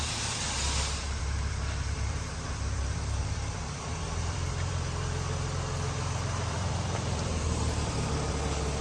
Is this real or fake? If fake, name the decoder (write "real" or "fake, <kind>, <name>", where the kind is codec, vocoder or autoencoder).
fake, vocoder, BigVGAN v2